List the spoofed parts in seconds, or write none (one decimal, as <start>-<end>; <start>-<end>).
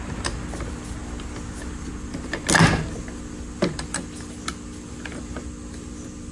none